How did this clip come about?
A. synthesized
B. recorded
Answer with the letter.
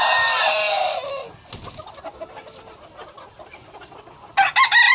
B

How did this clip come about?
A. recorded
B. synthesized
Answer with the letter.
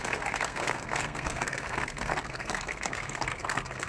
B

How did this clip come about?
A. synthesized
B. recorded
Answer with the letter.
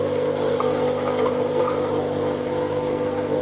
A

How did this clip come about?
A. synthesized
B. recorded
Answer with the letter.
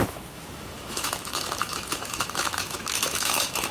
A